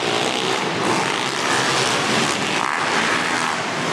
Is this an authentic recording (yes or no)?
yes